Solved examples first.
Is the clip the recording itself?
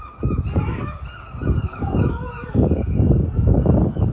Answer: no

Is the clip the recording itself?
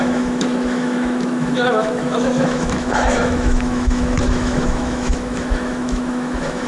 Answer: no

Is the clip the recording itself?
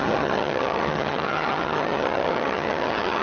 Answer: no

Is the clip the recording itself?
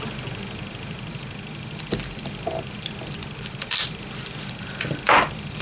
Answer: no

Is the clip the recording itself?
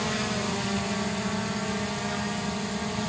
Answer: yes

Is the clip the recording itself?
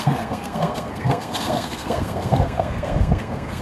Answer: no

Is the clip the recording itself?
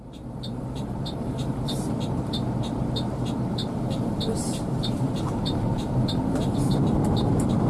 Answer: no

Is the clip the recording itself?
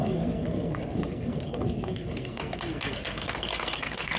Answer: no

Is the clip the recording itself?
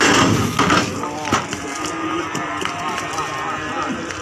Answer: yes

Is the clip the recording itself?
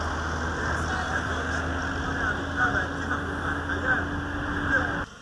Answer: yes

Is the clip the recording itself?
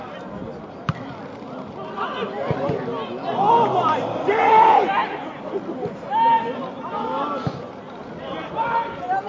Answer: yes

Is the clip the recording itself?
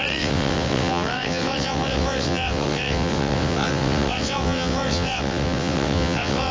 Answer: no